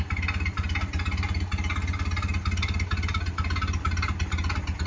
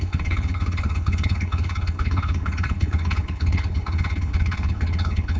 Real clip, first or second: first